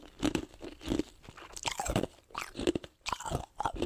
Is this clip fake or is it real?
real